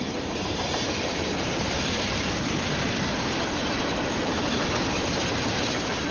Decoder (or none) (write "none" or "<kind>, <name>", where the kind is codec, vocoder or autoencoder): vocoder, BigVGAN v2